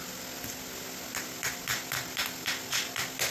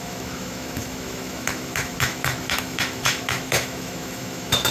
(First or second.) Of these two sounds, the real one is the first